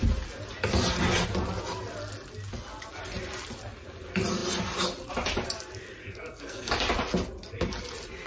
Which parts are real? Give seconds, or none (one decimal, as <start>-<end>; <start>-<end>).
0.0-6.0; 6.7-8.3

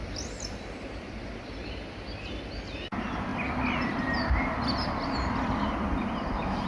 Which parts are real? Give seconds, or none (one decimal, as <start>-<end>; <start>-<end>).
2.4-3.3; 4.0-6.7

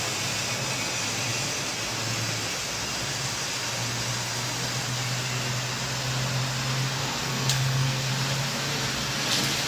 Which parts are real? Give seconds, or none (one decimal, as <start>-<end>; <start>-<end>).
0.0-7.0; 8.1-9.7

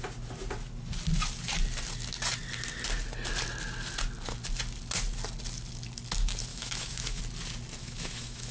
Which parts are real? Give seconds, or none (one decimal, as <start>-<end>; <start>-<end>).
0.0-6.5; 7.2-7.8

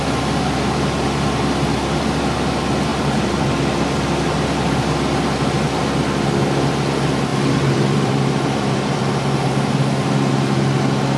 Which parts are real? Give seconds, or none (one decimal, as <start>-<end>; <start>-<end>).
0.0-2.9; 3.6-7.3; 9.1-11.2